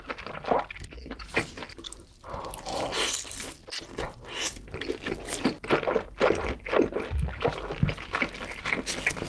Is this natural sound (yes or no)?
yes